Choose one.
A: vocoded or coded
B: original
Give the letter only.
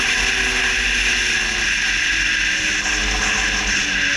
B